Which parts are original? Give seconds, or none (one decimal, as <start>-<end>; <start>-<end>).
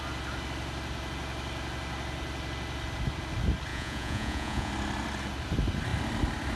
0.0-3.7; 4.7-6.6